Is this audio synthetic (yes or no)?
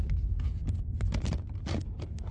no